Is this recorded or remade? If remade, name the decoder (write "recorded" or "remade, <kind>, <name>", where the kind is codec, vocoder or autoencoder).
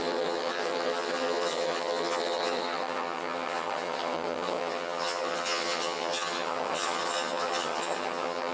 remade, vocoder, HiFi-GAN